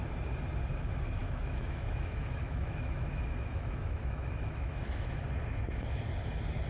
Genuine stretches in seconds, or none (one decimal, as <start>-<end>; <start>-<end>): 0.0-1.2; 5.2-6.7